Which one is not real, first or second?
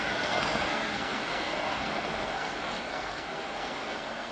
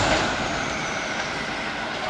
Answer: first